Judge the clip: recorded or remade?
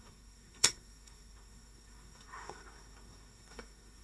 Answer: remade